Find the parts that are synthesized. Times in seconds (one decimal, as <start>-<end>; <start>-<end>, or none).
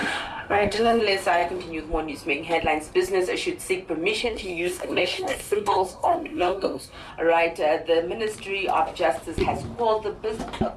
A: 0.0-1.0; 4.2-7.1